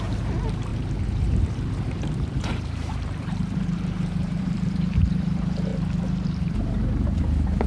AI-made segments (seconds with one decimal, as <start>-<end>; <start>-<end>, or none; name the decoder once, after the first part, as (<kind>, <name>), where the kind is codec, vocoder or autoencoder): 0.0-7.7 (vocoder, BigVGAN v2)